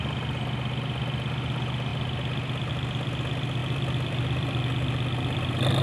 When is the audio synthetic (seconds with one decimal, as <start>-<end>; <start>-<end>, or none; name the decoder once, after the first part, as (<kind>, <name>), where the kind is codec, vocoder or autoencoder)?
3.6-4.6 (vocoder, BigVGAN v2)